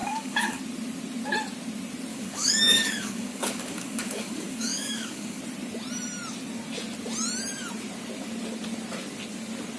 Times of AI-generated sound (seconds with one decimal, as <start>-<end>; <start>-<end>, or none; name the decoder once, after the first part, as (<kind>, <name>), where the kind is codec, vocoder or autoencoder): 0.0-0.6 (codec, DAC); 2.1-5.4